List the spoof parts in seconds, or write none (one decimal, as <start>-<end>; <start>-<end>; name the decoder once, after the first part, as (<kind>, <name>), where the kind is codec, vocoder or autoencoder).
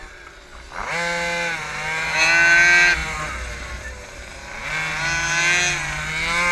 none